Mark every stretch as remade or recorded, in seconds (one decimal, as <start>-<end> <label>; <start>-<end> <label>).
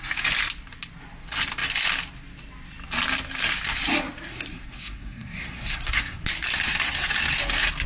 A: 0.0-4.3 recorded; 4.3-6.2 remade; 6.2-7.9 recorded